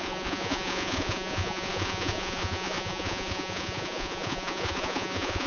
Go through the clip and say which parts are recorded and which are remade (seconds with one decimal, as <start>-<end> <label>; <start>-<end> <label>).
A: 0.0-5.5 remade